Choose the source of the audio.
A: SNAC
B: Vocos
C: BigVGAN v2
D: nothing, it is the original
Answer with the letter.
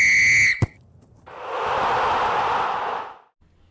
D